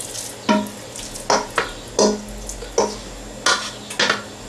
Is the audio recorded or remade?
recorded